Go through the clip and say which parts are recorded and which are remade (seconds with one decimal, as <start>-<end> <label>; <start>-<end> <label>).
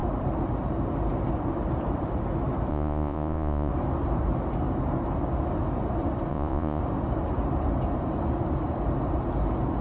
0.0-2.7 recorded; 2.7-3.7 remade; 3.7-6.3 recorded; 6.3-6.8 remade; 6.8-9.8 recorded